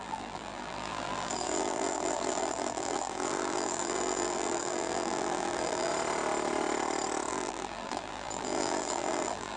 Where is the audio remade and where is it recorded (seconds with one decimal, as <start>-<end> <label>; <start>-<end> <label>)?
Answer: 0.0-5.9 remade; 5.9-7.3 recorded; 7.3-9.6 remade